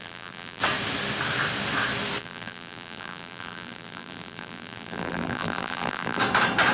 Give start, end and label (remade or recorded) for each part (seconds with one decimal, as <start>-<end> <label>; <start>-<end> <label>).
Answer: 0.0-0.6 remade; 0.6-2.2 recorded; 2.2-6.2 remade; 6.2-6.7 recorded